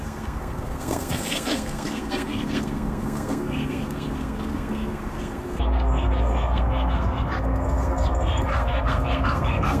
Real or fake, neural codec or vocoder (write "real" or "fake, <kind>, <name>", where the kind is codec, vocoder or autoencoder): fake, codec, SNAC